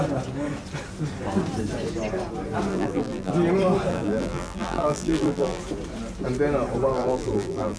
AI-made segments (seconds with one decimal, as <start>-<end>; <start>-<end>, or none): 2.7-3.3; 3.9-5.6; 6.9-7.8